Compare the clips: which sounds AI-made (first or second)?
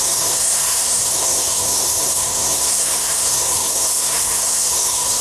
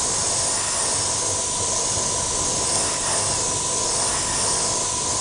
first